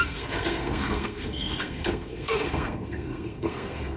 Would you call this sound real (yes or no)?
no